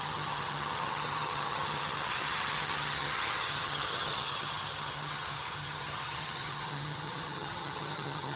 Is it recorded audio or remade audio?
remade